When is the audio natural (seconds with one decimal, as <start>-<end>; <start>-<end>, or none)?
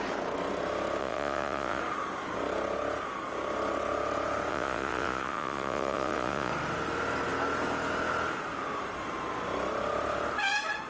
0.0-1.0; 1.8-4.5; 6.5-10.9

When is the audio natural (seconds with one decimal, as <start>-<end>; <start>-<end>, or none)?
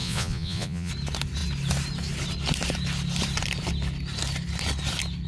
0.9-5.3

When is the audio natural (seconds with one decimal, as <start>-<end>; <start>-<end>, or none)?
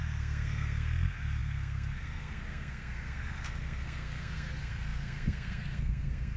none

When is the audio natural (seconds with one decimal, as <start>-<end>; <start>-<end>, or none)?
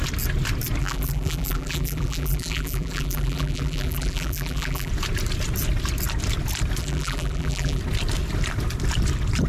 0.0-0.8; 4.9-6.8; 7.8-9.5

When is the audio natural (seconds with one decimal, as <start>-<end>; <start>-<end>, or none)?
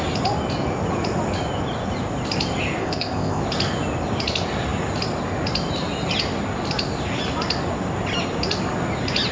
0.0-2.8; 3.4-9.3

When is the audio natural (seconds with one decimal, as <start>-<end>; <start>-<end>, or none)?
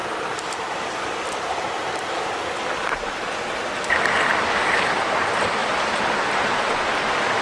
0.0-7.4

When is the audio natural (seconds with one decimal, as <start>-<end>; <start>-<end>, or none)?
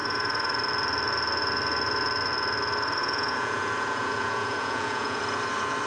0.0-3.0; 5.2-5.9